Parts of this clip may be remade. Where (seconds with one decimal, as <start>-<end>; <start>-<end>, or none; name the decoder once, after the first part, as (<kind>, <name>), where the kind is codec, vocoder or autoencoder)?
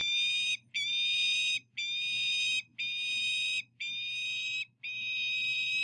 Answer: none